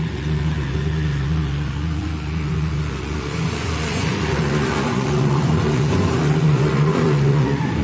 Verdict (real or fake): fake